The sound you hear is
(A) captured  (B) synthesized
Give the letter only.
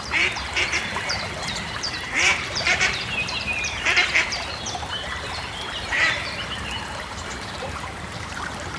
B